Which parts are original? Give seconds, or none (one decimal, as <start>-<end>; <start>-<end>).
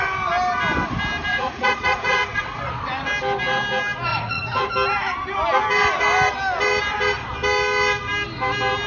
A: 0.0-1.3; 2.6-4.1; 4.7-8.9